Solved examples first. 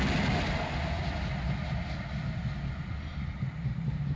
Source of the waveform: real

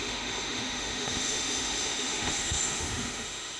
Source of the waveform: fake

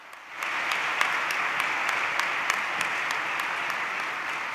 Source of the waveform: real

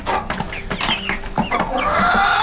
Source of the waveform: real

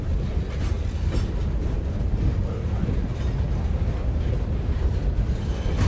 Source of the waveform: real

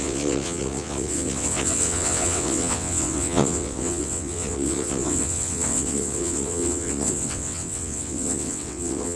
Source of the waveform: fake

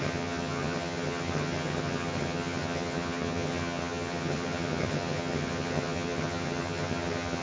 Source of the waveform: fake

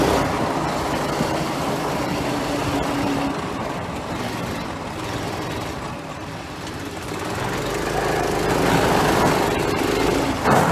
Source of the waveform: real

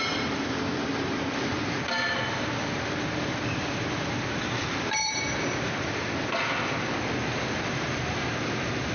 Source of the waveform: fake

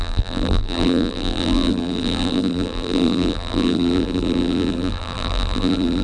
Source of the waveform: fake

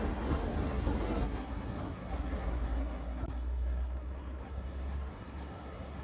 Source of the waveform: fake